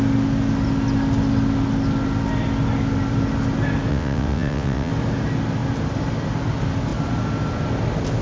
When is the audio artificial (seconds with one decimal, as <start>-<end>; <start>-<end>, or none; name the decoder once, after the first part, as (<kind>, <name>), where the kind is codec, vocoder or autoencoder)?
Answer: 3.9-4.9 (vocoder, WaveNeXt)